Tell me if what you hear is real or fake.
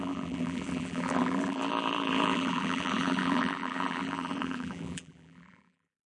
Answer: fake